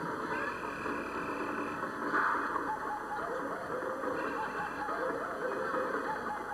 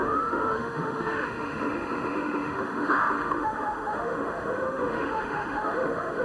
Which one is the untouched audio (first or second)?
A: first